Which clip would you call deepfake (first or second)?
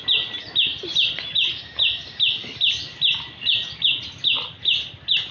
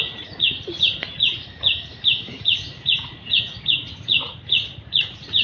second